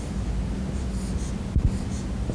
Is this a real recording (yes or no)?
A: yes